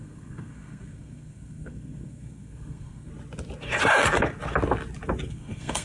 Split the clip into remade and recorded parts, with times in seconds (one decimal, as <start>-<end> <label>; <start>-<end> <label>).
0.0-3.1 remade; 3.1-5.3 recorded; 5.3-5.8 remade